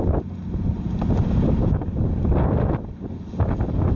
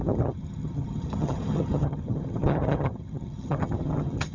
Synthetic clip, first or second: second